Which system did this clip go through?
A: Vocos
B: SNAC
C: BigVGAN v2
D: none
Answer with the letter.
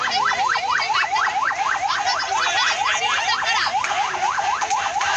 D